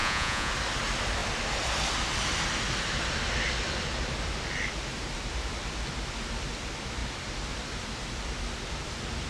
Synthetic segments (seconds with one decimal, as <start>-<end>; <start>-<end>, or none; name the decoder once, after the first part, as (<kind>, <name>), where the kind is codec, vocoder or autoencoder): 0.0-0.5 (vocoder, Vocos)